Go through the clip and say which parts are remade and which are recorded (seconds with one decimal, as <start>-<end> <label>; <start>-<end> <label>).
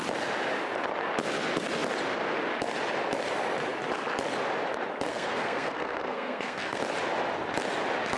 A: 0.0-5.1 recorded; 5.1-6.8 remade; 6.8-8.2 recorded